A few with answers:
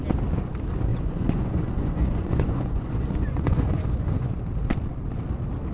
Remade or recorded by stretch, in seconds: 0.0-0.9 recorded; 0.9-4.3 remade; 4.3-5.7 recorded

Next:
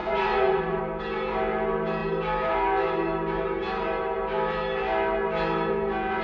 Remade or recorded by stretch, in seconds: 0.0-0.8 remade; 0.8-6.2 recorded

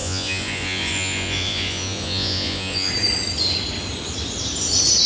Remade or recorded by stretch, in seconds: 0.0-2.9 remade; 2.9-5.1 recorded

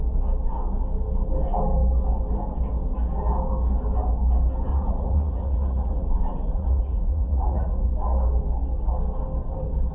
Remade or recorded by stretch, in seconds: 0.0-4.7 recorded; 4.7-7.9 remade; 7.9-9.9 recorded